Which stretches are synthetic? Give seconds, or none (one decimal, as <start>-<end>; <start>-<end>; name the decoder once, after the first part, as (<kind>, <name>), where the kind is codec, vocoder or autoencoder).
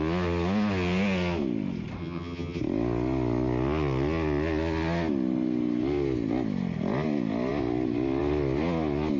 2.0-2.6 (vocoder, HiFi-GAN)